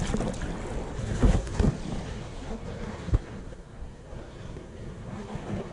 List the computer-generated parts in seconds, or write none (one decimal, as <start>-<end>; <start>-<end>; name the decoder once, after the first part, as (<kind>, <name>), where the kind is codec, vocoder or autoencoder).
1.0-1.7 (codec, SNAC); 2.1-5.7